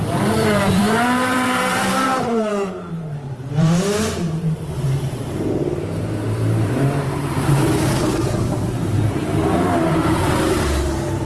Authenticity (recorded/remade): remade